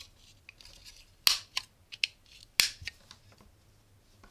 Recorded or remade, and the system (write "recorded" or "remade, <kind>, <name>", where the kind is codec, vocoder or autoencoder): recorded